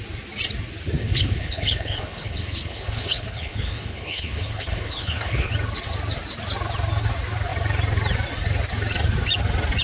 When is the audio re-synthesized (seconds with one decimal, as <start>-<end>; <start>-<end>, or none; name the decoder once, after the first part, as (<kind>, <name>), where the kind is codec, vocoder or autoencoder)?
1.0-5.5 (codec, HILCodec)